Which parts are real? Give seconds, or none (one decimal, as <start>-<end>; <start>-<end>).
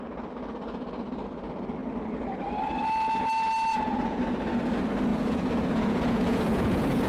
0.0-3.7; 4.2-5.1